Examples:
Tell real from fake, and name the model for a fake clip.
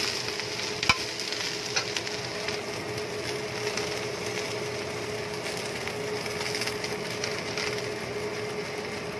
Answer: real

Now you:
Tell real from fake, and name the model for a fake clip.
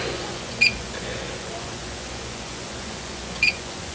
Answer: fake, vocoder, Vocos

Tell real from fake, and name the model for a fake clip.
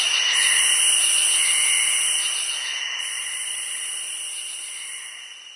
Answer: real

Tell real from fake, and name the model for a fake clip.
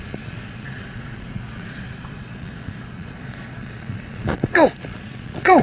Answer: fake, vocoder, Vocos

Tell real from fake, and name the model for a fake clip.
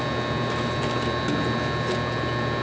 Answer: real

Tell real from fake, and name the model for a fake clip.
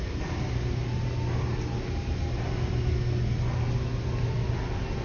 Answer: real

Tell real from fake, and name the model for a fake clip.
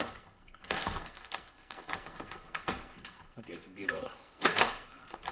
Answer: fake, codec, SNAC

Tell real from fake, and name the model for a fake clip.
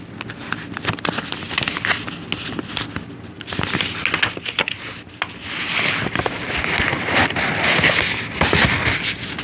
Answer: real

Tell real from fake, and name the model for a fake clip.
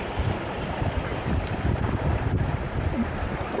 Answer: real